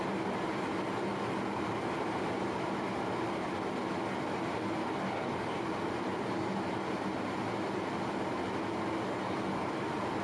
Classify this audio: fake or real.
real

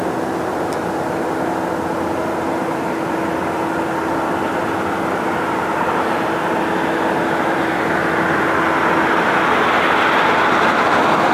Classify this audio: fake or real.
real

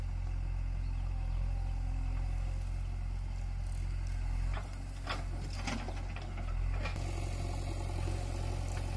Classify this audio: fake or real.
real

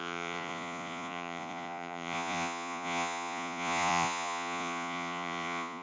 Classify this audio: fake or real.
fake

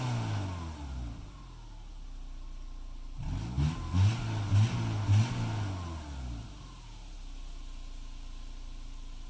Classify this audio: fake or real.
real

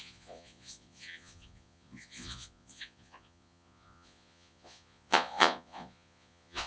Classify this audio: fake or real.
fake